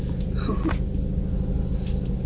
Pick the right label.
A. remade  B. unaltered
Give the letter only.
B